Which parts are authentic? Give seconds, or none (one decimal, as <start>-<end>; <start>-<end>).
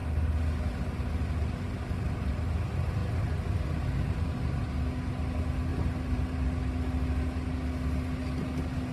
0.0-3.0; 4.3-5.7; 6.4-8.9